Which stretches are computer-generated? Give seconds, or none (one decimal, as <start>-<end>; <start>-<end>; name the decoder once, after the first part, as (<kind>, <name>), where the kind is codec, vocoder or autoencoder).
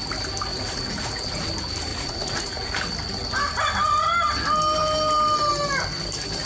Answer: 0.5-1.4 (vocoder, Vocos); 1.9-2.7